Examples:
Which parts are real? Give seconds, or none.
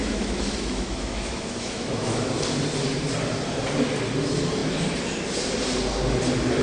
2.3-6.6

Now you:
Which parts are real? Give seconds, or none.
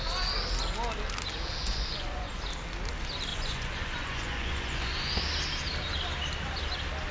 0.0-1.6; 2.4-3.3; 5.1-7.1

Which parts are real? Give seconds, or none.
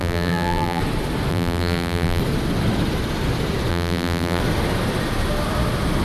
0.8-1.3; 2.2-3.7; 4.4-6.0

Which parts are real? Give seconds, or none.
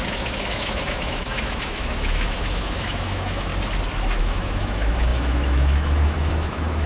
3.5-4.2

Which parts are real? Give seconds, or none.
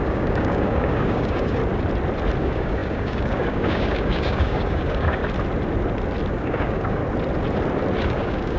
1.6-2.4; 5.2-6.3; 7.0-8.0